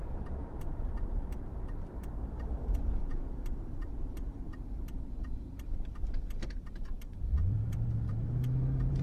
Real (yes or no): no